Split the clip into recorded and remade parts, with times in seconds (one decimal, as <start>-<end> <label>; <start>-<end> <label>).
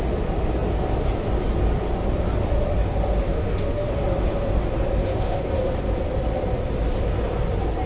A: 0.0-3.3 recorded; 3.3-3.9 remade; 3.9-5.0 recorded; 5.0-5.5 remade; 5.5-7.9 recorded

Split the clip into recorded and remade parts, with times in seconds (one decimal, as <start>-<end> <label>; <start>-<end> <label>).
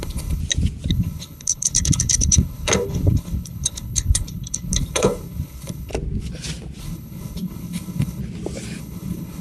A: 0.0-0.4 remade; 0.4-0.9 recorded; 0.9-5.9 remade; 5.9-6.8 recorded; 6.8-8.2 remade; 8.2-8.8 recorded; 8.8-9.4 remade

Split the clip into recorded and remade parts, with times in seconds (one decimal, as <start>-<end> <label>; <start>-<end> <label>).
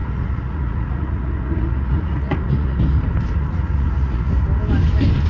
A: 0.0-2.8 remade; 2.8-3.4 recorded; 3.4-4.3 remade; 4.3-5.3 recorded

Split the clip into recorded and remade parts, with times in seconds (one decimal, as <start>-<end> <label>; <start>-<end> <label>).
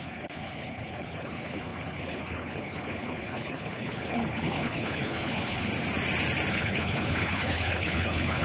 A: 0.0-5.7 remade; 5.7-6.5 recorded; 6.5-8.4 remade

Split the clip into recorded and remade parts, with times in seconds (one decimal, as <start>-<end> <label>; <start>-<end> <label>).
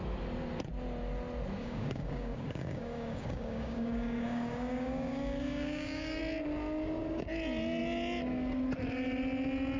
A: 0.0-1.6 recorded; 1.6-6.2 remade; 6.2-9.8 recorded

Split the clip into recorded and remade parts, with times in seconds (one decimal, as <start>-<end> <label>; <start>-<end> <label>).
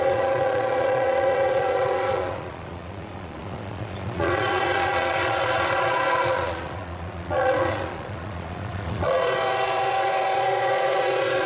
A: 0.0-11.5 remade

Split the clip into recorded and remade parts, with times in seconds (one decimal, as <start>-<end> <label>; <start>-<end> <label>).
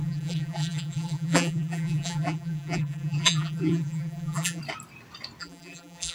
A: 0.0-4.6 remade; 4.6-5.4 recorded; 5.4-6.1 remade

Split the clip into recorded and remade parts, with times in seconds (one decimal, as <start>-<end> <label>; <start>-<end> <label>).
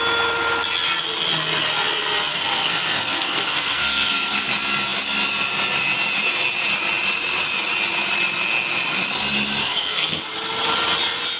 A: 0.0-2.3 recorded; 2.3-4.5 remade; 4.5-9.6 recorded; 9.6-10.2 remade; 10.2-11.4 recorded